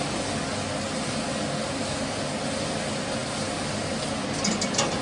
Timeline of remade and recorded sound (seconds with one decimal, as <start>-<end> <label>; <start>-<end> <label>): 0.0-5.0 recorded